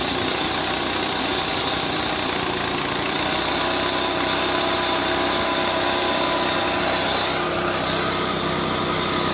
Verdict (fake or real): real